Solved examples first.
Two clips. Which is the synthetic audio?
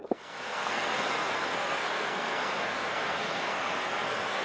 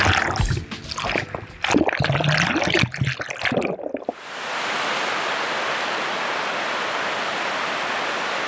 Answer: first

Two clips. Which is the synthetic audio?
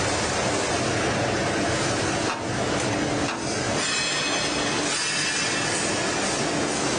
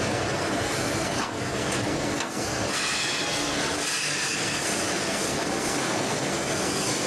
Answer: second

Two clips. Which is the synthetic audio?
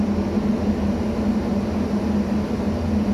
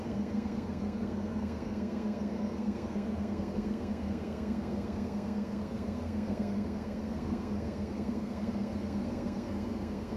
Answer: second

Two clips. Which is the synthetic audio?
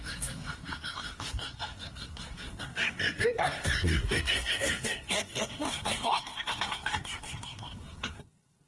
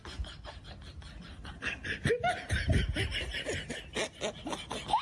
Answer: first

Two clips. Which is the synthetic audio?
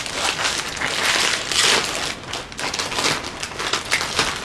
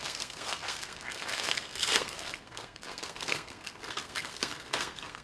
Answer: second